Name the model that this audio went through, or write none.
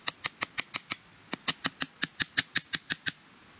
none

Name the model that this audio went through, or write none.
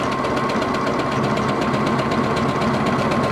none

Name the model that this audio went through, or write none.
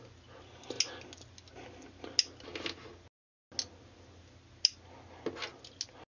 none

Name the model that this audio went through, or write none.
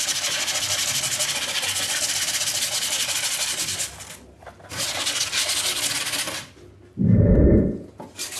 none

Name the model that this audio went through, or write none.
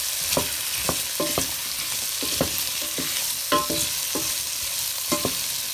none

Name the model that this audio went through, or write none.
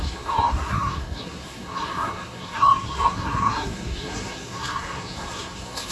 codec, SNAC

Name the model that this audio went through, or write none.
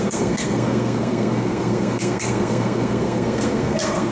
codec, SNAC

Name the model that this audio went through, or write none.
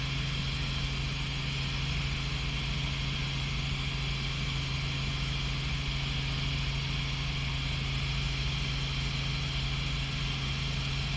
none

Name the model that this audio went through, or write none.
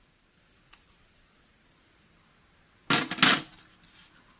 none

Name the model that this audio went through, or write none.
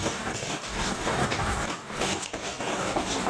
codec, DAC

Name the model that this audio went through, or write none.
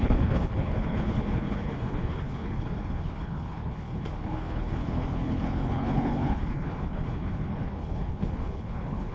codec, HILCodec